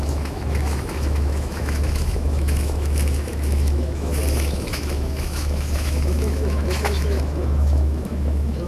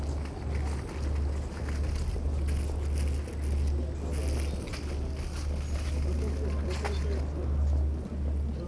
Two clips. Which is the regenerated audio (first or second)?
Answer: first